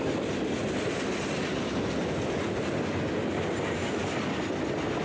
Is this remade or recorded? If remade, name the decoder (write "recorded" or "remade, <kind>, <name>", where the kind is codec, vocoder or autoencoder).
recorded